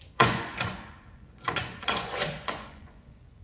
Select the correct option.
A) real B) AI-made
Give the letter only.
B